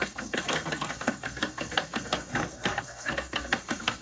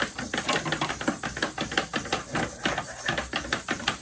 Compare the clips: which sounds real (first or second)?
second